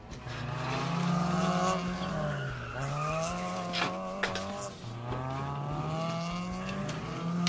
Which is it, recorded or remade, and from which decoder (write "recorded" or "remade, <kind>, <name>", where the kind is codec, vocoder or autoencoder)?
recorded